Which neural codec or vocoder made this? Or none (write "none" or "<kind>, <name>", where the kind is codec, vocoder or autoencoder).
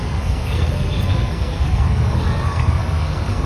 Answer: codec, SNAC